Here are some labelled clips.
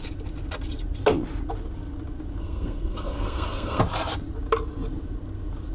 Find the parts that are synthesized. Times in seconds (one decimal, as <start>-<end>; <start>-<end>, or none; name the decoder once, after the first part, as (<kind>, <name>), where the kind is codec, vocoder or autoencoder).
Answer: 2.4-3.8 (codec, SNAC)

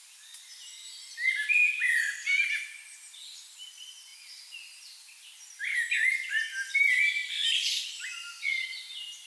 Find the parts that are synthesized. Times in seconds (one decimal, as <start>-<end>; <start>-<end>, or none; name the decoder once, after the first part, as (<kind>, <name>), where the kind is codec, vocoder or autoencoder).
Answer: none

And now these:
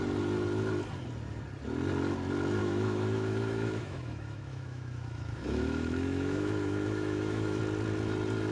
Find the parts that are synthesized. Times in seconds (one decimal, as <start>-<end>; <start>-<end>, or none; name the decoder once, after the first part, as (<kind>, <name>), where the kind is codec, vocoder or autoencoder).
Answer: 2.6-7.6 (autoencoder, DAC-VAE)

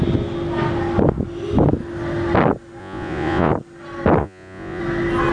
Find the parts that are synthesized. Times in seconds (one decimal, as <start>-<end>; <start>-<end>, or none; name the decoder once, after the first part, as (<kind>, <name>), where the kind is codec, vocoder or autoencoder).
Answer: 2.8-3.5 (vocoder, Vocos); 4.2-4.8

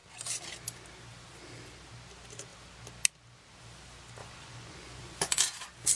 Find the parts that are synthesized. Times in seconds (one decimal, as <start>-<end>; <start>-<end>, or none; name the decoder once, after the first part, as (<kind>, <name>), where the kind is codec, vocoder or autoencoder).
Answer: 4.2-5.4 (vocoder, Vocos)

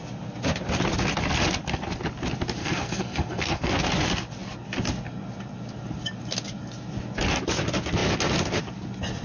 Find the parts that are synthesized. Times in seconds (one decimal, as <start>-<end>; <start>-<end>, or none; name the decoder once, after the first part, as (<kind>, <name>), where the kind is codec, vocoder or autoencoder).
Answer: 2.6-3.7 (codec, SNAC)